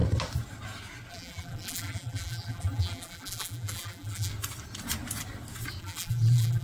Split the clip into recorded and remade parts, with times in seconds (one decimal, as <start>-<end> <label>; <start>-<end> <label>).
0.0-1.1 recorded; 1.1-4.3 remade; 4.3-5.8 recorded; 5.8-6.6 remade